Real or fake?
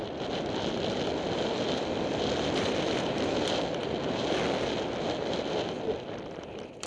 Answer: real